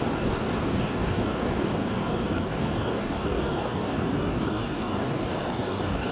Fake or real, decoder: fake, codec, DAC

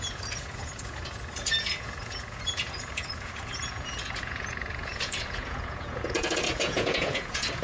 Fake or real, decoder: fake, vocoder, Vocos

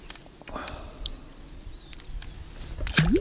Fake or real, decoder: real